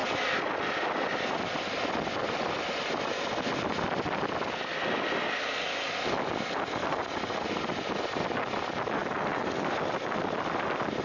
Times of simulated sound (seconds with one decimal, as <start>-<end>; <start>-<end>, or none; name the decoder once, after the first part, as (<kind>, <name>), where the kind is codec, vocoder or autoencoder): none